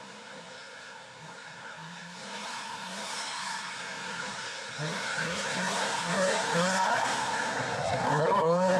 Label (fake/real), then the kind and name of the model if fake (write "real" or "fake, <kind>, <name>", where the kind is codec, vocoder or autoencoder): fake, codec, SNAC